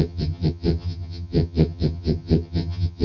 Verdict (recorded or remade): remade